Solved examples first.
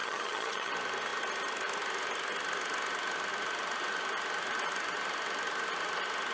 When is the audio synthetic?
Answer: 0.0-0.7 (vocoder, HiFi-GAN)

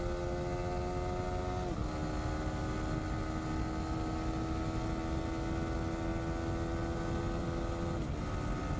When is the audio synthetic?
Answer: none